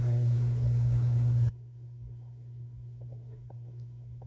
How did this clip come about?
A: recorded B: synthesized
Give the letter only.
B